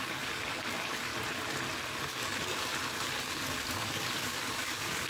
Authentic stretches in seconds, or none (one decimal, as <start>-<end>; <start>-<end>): 1.1-2.0; 2.7-3.2

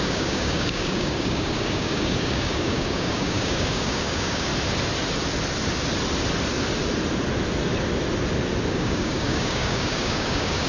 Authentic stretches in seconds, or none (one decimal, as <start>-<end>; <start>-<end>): 4.5-8.7

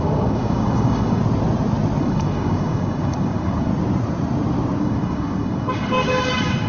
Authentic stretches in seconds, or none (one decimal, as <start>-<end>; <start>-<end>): 1.2-2.0; 3.7-4.8

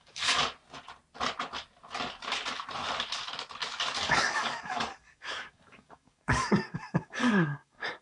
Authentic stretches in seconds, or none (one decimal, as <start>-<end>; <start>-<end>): 0.4-4.0

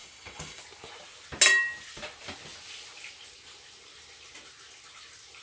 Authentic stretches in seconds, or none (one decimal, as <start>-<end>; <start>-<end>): 0.6-5.4

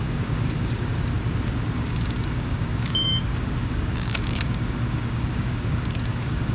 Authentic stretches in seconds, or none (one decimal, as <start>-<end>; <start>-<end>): 0.9-1.7